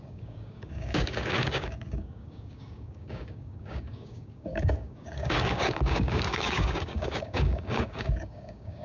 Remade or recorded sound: remade